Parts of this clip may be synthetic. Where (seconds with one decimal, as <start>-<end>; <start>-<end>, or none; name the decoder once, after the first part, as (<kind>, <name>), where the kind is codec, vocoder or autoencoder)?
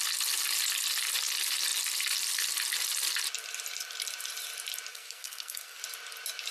4.9-5.8 (codec, SNAC)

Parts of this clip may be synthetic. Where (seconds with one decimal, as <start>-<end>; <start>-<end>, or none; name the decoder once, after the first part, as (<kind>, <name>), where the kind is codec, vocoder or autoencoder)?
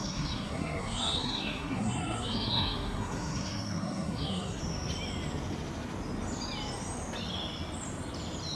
0.0-4.6 (codec, SNAC)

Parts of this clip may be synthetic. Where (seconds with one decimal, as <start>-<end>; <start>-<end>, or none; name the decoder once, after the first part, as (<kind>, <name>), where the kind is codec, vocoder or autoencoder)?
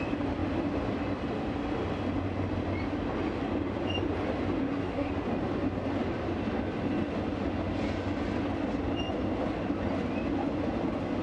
4.6-5.1 (codec, SNAC)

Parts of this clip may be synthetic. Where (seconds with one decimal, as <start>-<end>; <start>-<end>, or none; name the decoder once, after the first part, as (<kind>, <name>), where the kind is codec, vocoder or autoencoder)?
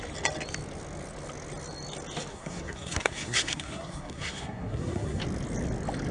2.3-5.2 (codec, SNAC)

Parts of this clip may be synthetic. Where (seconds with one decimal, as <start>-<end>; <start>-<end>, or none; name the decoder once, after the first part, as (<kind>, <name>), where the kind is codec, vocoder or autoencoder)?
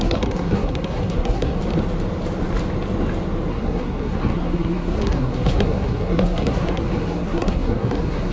0.0-1.6 (codec, SNAC); 3.5-8.3